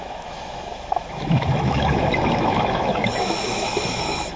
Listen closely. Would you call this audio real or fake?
fake